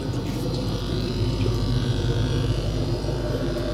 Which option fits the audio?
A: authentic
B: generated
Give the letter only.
B